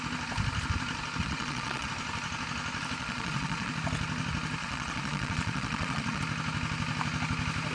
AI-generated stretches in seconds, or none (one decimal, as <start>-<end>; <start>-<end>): 1.2-1.9; 3.0-3.7; 4.6-6.2